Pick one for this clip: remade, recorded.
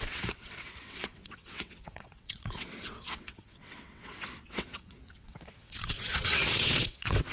remade